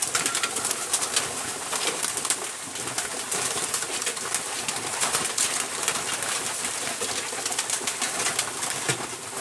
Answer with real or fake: real